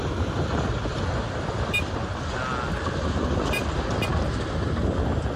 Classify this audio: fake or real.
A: real